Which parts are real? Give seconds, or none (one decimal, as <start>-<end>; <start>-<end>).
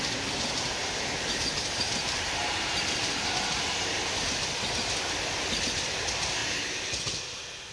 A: 0.0-0.8; 4.0-6.4; 6.9-7.7